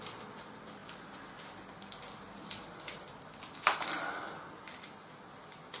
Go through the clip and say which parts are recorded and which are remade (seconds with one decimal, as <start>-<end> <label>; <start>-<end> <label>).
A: 0.0-0.8 recorded; 0.8-2.2 remade; 2.2-2.6 recorded; 2.6-3.4 remade; 3.4-5.8 recorded